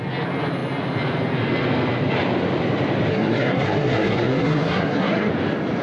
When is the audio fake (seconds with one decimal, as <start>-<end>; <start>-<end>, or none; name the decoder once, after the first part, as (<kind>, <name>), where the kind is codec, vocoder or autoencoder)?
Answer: 3.1-5.3 (codec, SNAC)